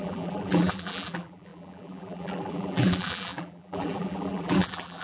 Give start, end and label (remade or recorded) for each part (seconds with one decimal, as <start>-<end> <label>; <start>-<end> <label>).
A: 0.0-5.0 remade